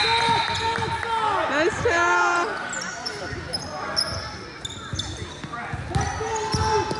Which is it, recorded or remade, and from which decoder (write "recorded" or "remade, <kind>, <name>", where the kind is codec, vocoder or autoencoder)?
recorded